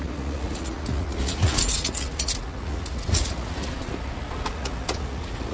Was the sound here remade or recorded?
remade